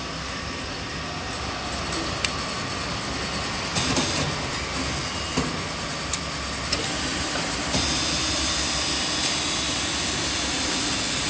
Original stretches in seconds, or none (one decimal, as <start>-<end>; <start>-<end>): 0.0-7.1; 10.7-11.3